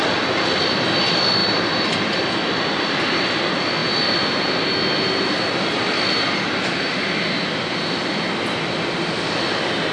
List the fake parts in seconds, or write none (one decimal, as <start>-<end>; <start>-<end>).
1.4-2.2